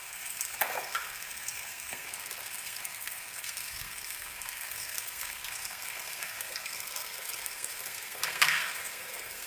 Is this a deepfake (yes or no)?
yes